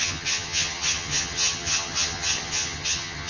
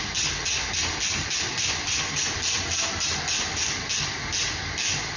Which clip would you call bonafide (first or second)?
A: second